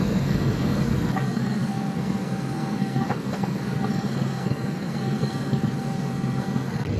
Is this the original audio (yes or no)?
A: no